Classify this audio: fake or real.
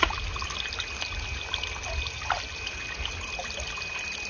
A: real